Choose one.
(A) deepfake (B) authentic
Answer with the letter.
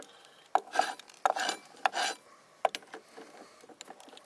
B